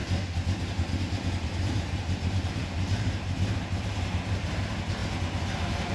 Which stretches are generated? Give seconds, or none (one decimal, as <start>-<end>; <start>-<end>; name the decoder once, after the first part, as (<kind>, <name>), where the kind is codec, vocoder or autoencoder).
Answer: 0.6-5.0 (vocoder, BigVGAN v2)